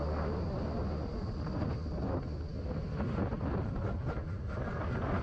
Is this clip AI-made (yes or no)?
no